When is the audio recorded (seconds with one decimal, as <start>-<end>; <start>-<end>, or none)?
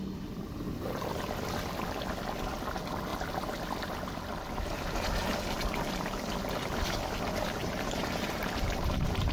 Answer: 0.0-7.6